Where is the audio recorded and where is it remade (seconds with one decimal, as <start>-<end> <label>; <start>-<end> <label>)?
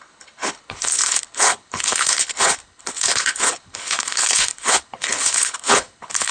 0.0-6.3 remade